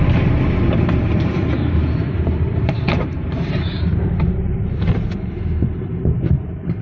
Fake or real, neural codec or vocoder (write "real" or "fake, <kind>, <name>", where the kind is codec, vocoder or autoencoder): fake, vocoder, BigVGAN v2